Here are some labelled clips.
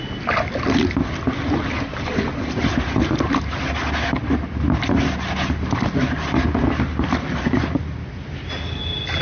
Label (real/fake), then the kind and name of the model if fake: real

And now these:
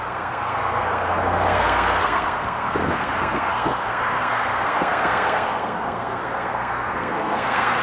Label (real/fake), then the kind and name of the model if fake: fake, codec, SNAC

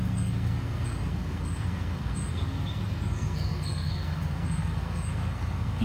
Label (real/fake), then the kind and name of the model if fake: fake, codec, SNAC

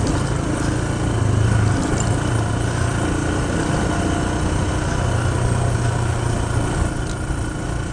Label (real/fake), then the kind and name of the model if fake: real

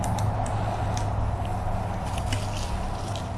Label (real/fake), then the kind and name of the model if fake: real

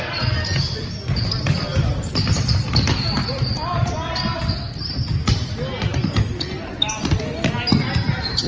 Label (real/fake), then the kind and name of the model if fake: real